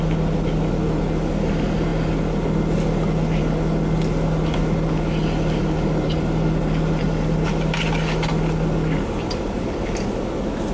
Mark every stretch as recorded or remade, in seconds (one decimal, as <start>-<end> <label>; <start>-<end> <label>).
0.0-10.7 recorded